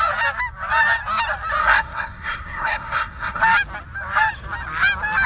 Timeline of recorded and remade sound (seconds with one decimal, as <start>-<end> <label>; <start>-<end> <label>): 0.0-1.6 recorded; 1.6-3.4 remade; 3.4-5.3 recorded